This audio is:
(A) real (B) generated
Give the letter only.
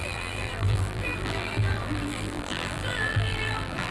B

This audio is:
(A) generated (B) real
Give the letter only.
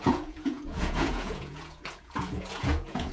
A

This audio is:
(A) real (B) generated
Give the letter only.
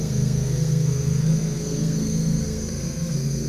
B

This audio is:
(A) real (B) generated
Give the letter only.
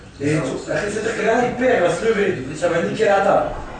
A